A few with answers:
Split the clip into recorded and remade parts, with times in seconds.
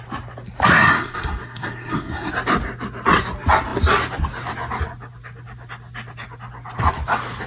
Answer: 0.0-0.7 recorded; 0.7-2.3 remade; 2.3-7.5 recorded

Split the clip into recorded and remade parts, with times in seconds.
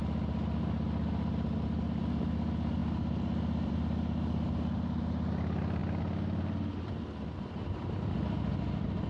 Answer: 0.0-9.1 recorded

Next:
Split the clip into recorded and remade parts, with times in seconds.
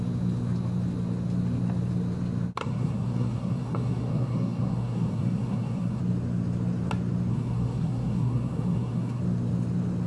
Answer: 0.0-2.6 recorded; 2.6-6.0 remade; 6.0-7.3 recorded; 7.3-9.2 remade; 9.2-10.1 recorded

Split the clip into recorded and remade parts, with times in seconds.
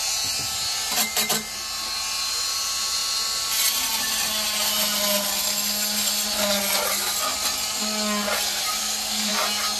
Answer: 0.0-8.8 recorded; 8.8-9.3 remade; 9.3-9.8 recorded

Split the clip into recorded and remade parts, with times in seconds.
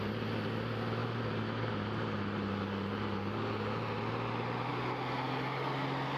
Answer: 0.0-6.2 recorded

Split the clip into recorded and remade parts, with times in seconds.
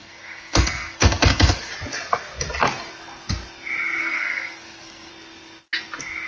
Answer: 0.0-1.7 remade; 1.7-4.0 recorded; 4.0-5.1 remade; 5.1-6.3 recorded